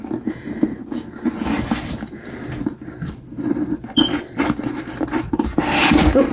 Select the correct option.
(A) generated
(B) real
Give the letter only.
B